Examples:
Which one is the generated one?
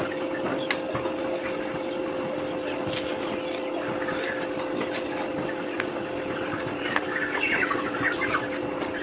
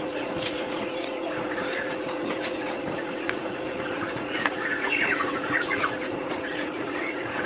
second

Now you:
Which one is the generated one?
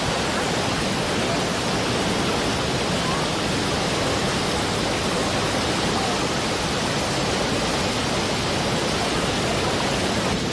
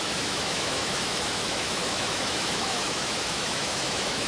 second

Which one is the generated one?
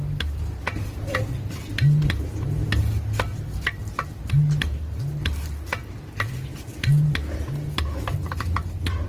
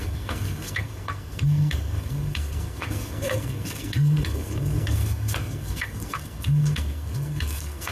second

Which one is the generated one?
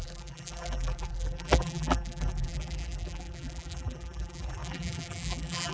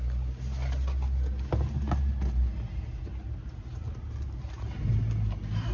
first